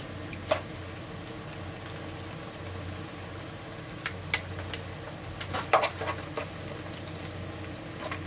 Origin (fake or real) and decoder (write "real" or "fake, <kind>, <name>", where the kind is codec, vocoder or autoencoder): real